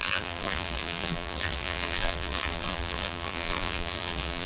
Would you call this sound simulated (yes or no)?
yes